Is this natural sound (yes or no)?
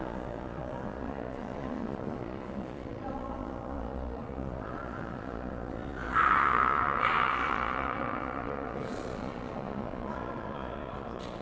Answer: no